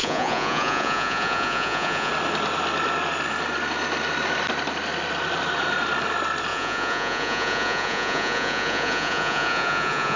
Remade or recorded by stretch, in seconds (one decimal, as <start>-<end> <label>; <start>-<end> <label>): 0.0-2.1 remade; 2.1-6.5 recorded; 6.5-10.2 remade